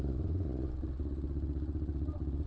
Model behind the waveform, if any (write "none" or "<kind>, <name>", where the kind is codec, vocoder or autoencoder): vocoder, Vocos